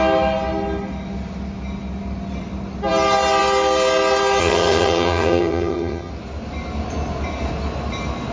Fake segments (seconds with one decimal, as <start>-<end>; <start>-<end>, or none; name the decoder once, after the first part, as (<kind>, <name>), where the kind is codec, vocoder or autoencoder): 4.4-6.1 (vocoder, HiFi-GAN)